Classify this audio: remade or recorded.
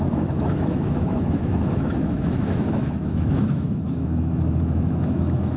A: remade